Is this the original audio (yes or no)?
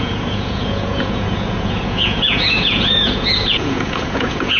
no